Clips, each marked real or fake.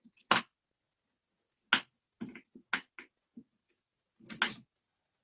real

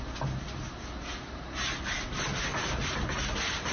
real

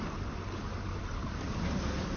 real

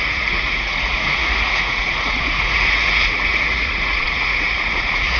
fake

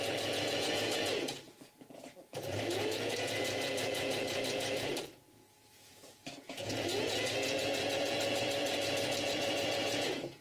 fake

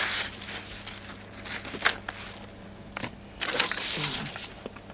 real